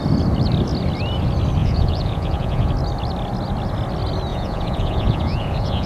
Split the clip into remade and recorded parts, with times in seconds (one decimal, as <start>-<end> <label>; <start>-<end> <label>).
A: 0.0-1.6 recorded; 1.6-2.7 remade; 2.7-4.3 recorded; 4.3-5.9 remade